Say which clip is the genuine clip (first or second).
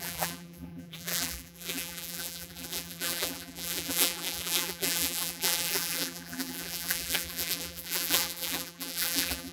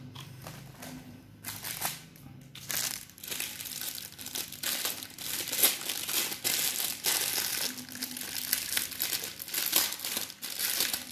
second